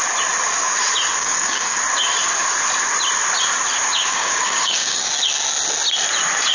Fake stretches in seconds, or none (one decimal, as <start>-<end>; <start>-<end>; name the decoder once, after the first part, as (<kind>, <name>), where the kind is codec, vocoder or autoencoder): 1.2-1.8 (codec, DAC); 4.1-5.1